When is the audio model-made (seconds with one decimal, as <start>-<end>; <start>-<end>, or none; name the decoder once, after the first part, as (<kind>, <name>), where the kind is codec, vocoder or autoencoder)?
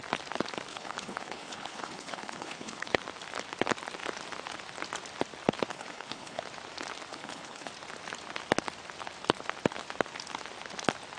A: 0.7-3.0 (codec, HILCodec); 5.7-6.4; 7.1-7.7